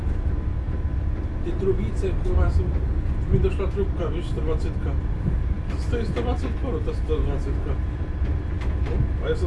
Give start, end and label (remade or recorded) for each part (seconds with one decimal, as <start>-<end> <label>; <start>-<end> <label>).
0.0-9.5 recorded